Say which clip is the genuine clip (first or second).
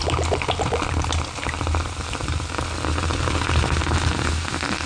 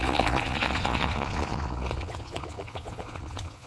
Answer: first